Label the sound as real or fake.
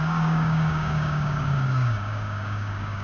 fake